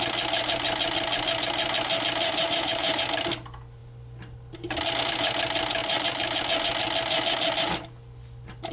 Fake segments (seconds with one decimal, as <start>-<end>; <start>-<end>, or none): 2.3-3.0; 5.8-6.4